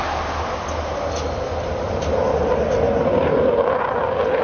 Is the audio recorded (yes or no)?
yes